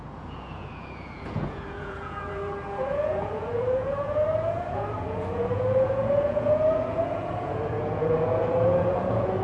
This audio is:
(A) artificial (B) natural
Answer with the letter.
A